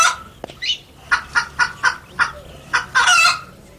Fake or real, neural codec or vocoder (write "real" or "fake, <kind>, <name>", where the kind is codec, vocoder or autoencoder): real